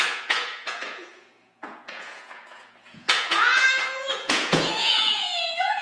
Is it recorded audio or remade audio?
remade